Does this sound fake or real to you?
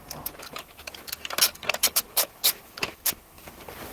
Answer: fake